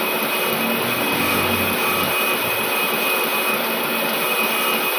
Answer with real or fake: real